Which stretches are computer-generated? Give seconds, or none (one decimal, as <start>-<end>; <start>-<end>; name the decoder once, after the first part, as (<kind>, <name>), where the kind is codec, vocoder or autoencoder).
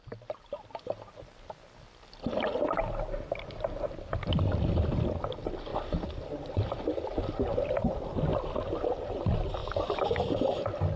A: 5.7-7.9 (vocoder, BigVGAN v2); 8.3-9.1; 9.6-10.3